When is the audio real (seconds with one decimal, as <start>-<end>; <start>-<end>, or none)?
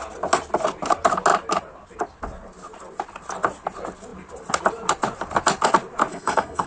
0.0-6.1